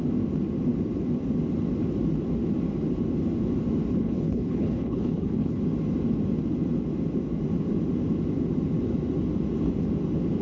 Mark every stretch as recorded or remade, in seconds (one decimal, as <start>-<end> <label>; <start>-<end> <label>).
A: 0.0-3.9 recorded; 3.9-5.6 remade; 5.6-10.4 recorded